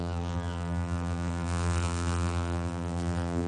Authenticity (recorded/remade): remade